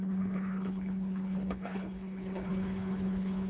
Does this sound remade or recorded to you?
remade